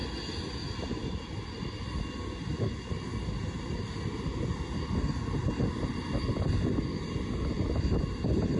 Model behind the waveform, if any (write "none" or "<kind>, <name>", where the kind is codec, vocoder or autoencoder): none